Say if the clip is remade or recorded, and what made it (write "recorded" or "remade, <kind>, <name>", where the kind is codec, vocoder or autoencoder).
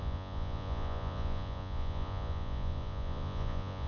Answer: remade, vocoder, Vocos